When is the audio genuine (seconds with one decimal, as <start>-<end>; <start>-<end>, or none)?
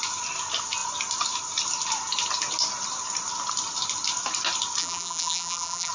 0.0-4.8